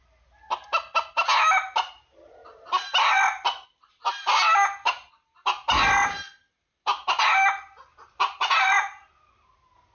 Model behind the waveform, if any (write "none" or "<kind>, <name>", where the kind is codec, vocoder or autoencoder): none